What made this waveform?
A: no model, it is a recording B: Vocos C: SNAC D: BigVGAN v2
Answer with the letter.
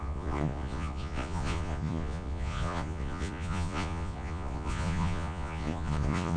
B